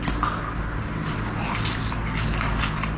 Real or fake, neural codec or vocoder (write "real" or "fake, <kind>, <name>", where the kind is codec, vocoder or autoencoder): real